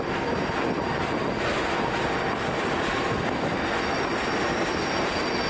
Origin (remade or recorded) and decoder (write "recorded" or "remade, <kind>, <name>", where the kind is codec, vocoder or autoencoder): recorded